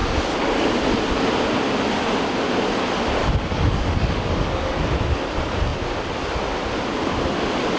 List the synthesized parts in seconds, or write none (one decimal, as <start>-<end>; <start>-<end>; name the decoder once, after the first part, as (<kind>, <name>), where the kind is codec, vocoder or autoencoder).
3.2-4.8 (codec, DAC)